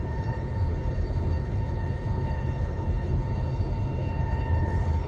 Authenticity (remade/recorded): remade